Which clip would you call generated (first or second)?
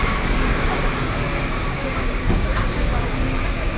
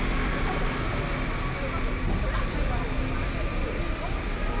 first